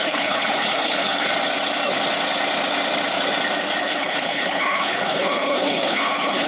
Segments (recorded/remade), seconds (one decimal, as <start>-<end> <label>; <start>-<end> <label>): 0.0-1.3 remade; 1.3-3.8 recorded; 3.8-6.5 remade